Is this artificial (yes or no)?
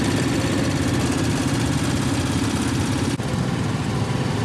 no